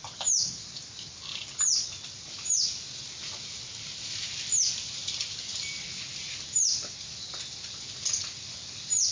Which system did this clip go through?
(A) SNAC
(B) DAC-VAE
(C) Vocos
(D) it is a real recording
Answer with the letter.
D